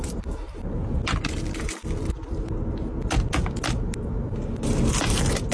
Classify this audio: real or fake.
real